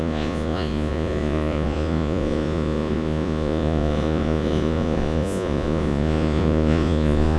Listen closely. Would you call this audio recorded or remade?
remade